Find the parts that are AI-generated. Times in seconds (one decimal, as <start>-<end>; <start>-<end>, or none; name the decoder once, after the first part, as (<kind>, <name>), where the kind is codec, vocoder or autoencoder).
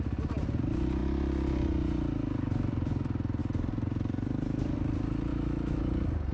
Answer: 5.3-5.8 (autoencoder, DAC-VAE)